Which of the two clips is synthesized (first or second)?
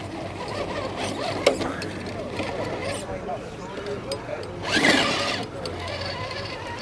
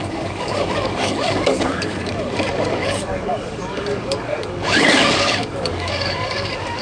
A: second